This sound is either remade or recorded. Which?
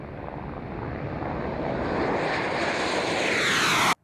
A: recorded